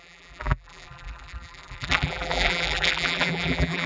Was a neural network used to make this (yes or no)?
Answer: yes